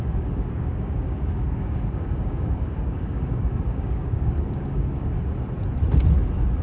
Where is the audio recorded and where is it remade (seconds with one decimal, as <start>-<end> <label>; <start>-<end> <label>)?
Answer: 0.0-5.1 remade; 5.1-6.6 recorded